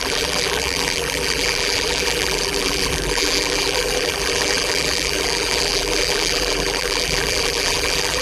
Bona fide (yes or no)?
no